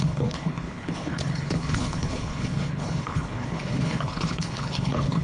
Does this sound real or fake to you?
fake